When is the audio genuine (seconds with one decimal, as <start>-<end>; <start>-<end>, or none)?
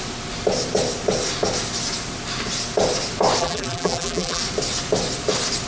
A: 0.0-3.4; 4.4-5.7